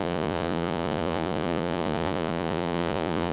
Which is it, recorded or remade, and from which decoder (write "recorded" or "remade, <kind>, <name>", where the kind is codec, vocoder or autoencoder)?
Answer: remade, vocoder, Vocos